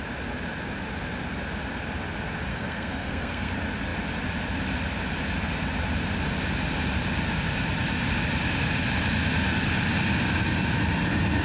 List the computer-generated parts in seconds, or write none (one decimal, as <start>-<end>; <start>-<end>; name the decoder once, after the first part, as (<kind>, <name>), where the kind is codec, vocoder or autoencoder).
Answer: 2.5-3.5 (codec, SNAC)